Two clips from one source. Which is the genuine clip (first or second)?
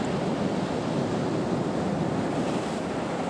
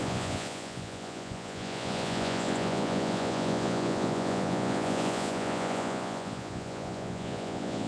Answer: first